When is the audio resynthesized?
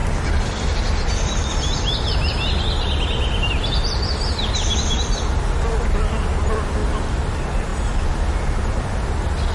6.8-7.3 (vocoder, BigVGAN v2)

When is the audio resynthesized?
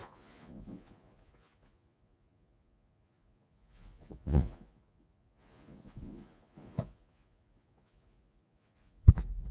0.0-9.5 (vocoder, Vocos)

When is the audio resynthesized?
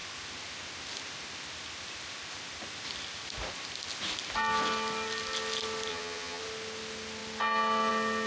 5.9-6.4 (vocoder, HiFi-GAN)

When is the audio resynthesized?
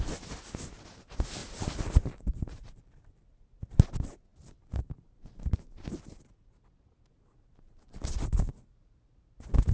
1.4-2.8 (vocoder, BigVGAN v2)